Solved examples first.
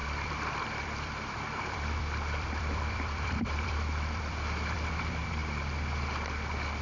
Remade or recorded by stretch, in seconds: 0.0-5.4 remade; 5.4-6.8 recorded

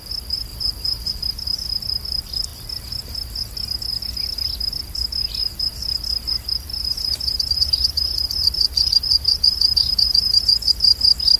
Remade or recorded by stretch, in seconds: 0.0-0.5 recorded; 0.5-1.1 remade; 1.1-6.7 recorded; 6.7-10.7 remade; 10.7-11.4 recorded

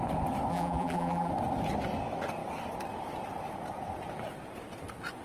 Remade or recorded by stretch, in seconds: 0.0-0.5 recorded; 0.5-1.3 remade; 1.3-5.2 recorded

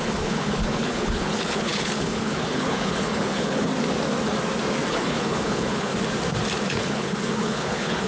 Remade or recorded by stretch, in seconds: 0.0-3.7 remade; 3.7-4.9 recorded; 4.9-5.9 remade; 5.9-6.7 recorded; 6.7-8.1 remade